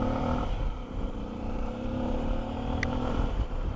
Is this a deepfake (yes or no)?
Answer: yes